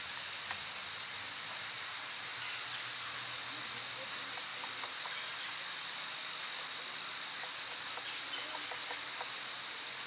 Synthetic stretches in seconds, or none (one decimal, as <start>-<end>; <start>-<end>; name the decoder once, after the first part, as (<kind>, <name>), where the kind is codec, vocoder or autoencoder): 4.5-5.4 (vocoder, BigVGAN v2)